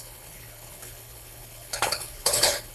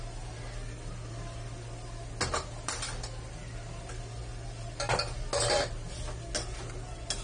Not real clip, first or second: first